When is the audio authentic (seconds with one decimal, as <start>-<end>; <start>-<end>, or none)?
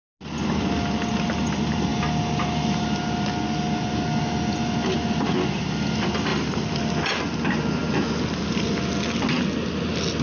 0.0-6.3; 6.8-10.2